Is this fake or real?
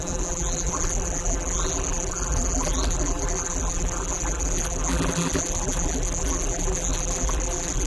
fake